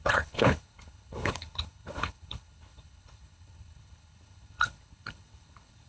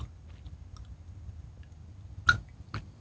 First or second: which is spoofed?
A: first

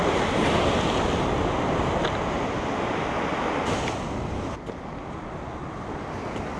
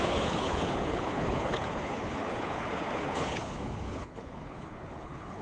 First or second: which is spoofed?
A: second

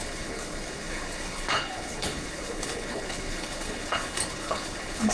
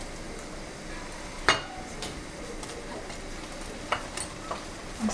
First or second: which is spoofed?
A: first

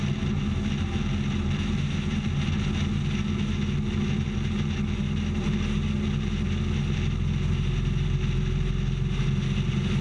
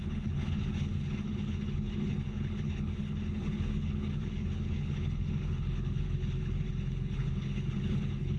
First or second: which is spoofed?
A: second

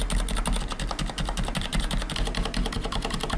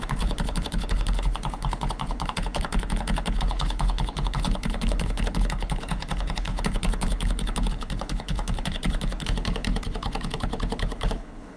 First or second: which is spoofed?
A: second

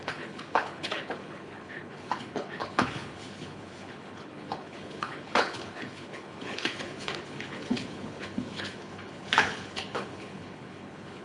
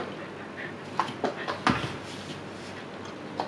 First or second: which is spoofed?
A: first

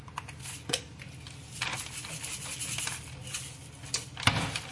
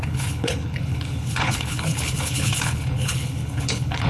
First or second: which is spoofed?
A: second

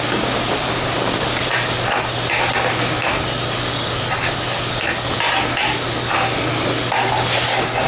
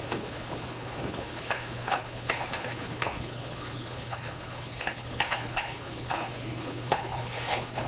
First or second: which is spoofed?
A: second